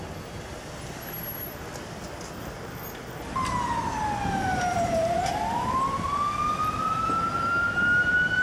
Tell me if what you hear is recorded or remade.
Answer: recorded